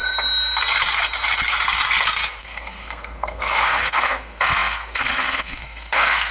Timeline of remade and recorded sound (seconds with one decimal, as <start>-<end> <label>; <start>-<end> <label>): 0.0-2.4 recorded; 2.4-6.3 remade